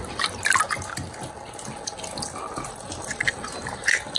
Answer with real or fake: real